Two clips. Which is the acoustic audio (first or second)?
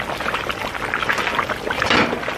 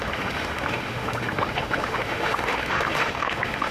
first